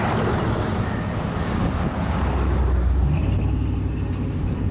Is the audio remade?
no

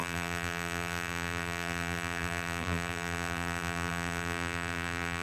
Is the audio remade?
yes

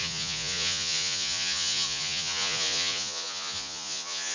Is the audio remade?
yes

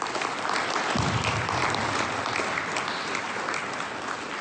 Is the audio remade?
no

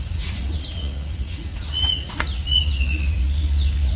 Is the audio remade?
yes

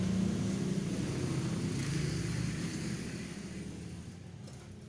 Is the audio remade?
no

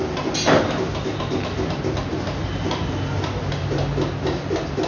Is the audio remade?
no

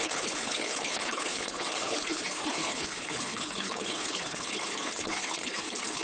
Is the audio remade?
yes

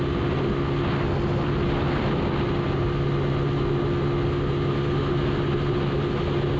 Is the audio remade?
no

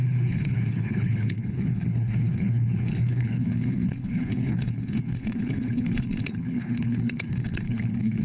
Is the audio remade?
yes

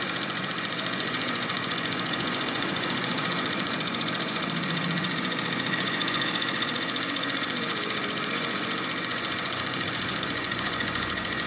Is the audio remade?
yes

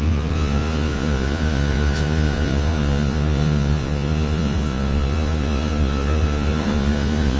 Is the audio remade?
yes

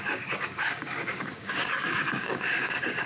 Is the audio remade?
yes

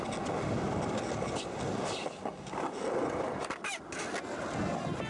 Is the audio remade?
no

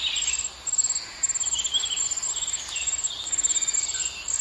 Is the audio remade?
no